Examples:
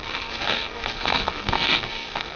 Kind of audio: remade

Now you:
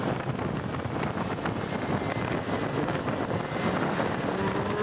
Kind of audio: recorded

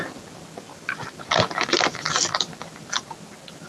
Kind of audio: recorded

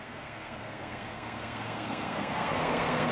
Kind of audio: remade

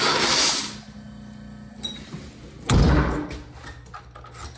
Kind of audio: recorded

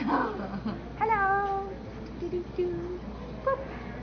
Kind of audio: recorded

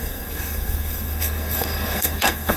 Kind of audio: remade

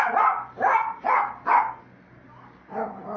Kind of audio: recorded